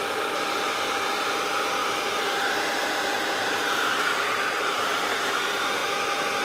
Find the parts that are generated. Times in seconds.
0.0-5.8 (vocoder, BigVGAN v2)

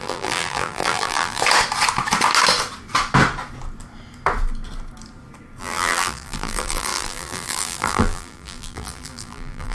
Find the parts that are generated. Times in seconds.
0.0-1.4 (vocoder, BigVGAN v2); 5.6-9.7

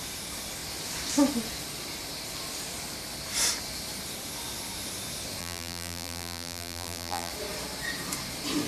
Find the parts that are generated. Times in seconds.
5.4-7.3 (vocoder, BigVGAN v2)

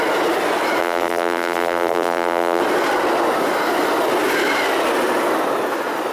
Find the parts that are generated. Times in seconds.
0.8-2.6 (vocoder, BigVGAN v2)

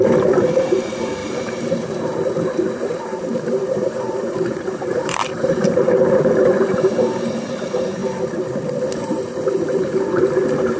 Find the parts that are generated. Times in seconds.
0.0-8.0 (vocoder, BigVGAN v2); 9.0-10.8

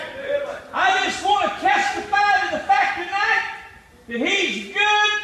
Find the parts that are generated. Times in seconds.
none